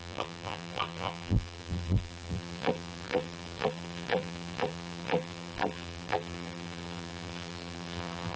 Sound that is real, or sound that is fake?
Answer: fake